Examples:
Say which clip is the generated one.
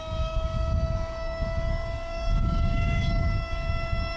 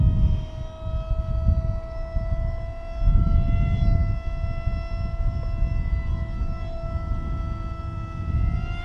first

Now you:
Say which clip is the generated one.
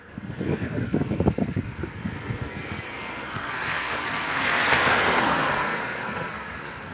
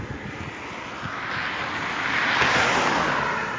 first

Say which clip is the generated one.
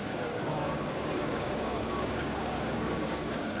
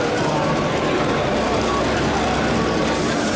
first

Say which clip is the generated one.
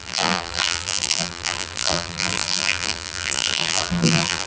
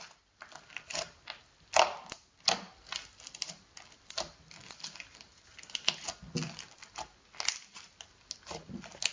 first